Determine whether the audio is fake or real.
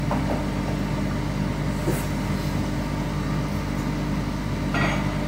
real